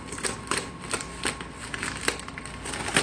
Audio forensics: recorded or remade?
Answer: recorded